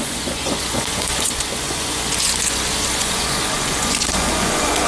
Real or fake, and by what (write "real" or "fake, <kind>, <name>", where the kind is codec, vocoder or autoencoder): fake, vocoder, Vocos